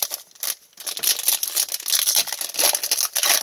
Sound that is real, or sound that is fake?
real